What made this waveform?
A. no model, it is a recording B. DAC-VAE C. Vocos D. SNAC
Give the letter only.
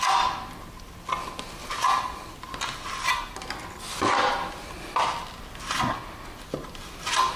A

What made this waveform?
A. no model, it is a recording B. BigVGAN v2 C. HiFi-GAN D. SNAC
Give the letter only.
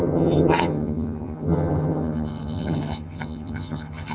C